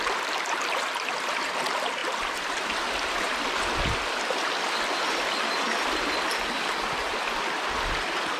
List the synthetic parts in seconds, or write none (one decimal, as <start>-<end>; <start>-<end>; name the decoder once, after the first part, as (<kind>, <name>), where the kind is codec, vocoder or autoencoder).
none